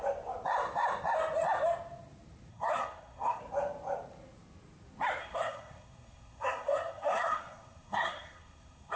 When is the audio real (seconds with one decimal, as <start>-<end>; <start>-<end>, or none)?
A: 0.0-2.5; 3.4-5.2